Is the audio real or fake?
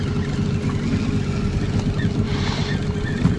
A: real